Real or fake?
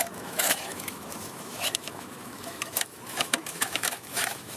fake